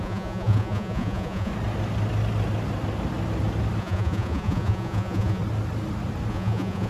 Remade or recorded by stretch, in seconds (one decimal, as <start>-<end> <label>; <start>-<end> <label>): 0.0-1.5 remade; 1.5-3.8 recorded; 3.8-5.4 remade; 5.4-6.3 recorded; 6.3-6.9 remade